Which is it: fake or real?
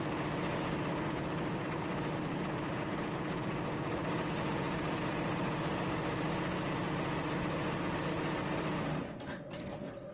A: real